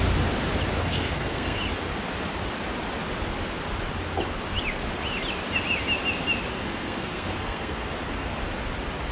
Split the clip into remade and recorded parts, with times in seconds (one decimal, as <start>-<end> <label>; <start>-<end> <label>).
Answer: 0.0-0.8 recorded; 0.8-1.6 remade; 1.6-6.5 recorded; 6.5-8.3 remade; 8.3-9.1 recorded